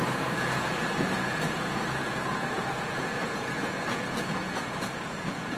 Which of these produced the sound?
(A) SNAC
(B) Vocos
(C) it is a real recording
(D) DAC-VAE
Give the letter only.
B